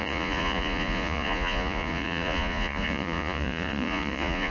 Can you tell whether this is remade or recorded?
remade